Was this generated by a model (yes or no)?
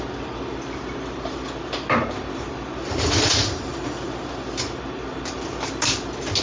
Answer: no